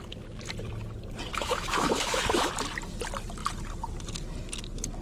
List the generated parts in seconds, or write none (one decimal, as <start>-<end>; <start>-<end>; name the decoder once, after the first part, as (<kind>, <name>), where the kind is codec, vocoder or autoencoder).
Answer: 1.3-2.5 (autoencoder, DAC-VAE)